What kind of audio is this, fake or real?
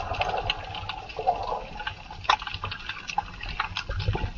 real